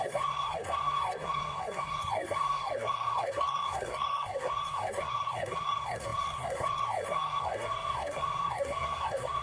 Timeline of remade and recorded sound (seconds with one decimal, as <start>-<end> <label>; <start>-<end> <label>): 0.0-9.4 remade